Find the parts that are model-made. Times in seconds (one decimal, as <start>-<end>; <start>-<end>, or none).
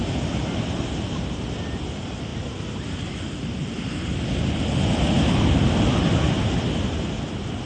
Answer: 2.3-3.1